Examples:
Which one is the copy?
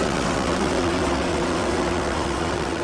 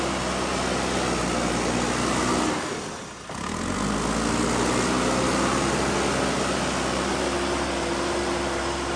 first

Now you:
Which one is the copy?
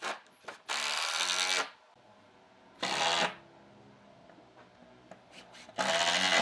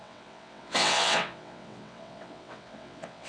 second